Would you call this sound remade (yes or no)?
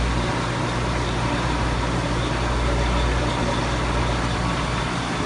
no